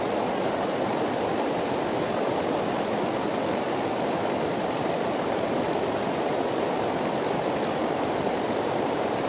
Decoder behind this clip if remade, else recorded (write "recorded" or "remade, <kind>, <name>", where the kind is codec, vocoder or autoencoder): recorded